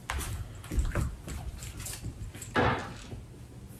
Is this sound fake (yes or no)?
no